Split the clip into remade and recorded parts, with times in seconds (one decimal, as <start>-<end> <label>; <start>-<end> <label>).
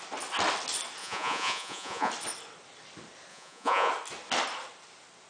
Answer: 0.0-1.0 recorded; 1.0-2.1 remade; 2.1-3.3 recorded; 3.3-3.9 remade; 3.9-5.3 recorded